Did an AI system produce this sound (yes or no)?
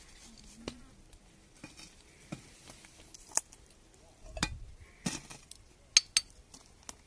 no